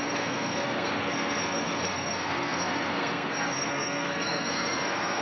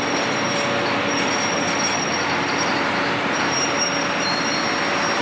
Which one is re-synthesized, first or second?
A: first